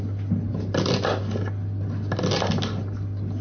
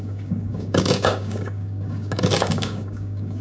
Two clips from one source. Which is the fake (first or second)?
second